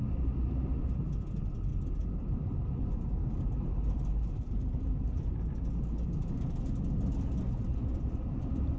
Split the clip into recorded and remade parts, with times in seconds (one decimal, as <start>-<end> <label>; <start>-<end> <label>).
0.0-1.7 recorded; 1.7-5.3 remade; 5.3-8.8 recorded